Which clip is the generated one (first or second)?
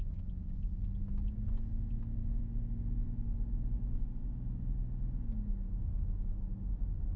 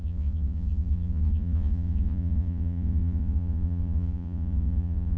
second